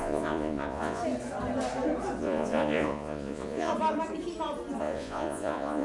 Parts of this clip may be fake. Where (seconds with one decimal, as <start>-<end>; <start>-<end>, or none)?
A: 0.0-1.0; 2.2-3.7; 4.8-5.8

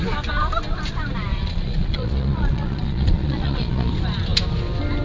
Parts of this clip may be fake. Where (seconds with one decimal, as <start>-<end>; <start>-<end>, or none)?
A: 1.3-3.9

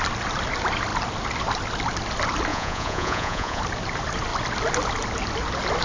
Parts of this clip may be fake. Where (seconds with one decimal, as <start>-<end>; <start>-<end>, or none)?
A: 2.5-3.6

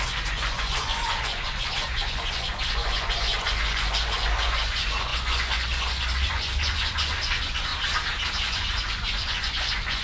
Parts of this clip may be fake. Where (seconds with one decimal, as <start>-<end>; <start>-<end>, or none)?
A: 0.0-7.7; 8.4-10.0